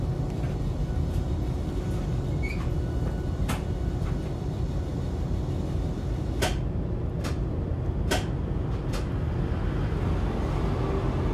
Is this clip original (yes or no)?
yes